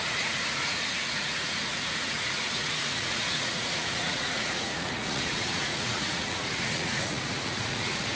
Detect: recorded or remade remade